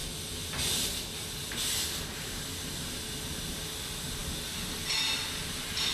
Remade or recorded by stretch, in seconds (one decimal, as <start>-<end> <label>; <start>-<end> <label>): 0.0-5.9 recorded